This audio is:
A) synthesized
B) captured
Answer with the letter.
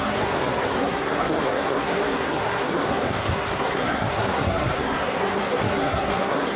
A